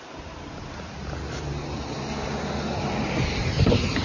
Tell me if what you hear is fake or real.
real